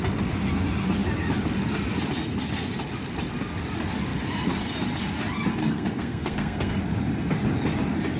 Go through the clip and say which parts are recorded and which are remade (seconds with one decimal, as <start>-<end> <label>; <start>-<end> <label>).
0.0-5.6 recorded; 5.6-6.7 remade; 6.7-8.2 recorded